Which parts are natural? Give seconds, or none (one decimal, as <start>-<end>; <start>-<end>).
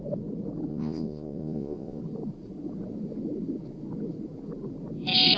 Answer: 0.0-0.7; 2.0-5.4